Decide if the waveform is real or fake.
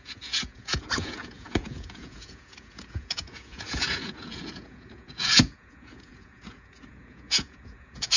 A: fake